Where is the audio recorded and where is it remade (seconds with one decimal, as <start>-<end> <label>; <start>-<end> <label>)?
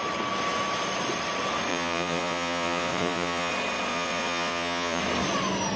0.0-1.7 recorded; 1.7-3.5 remade; 3.5-3.9 recorded; 3.9-5.0 remade; 5.0-5.8 recorded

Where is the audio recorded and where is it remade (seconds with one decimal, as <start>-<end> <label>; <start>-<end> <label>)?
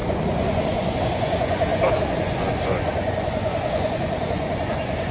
0.0-5.1 remade